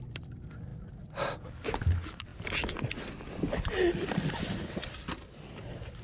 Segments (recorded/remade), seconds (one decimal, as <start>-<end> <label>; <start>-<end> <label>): 0.0-6.0 recorded